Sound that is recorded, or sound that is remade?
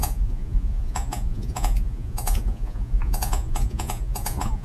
remade